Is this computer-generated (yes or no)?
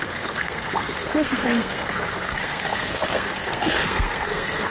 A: yes